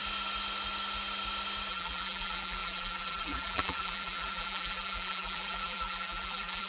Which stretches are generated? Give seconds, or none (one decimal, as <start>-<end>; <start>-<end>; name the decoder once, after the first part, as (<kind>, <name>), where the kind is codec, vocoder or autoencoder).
1.7-6.7 (vocoder, BigVGAN v2)